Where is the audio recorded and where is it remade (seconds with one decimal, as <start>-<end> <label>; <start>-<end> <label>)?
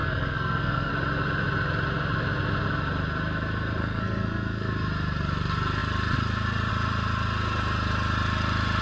0.0-0.9 remade; 0.9-3.8 recorded; 3.8-4.7 remade; 4.7-8.8 recorded